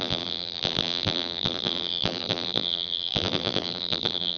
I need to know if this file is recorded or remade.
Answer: remade